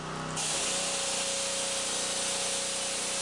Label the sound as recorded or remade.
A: recorded